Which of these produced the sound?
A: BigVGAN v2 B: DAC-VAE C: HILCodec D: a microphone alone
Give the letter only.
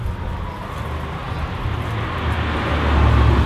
D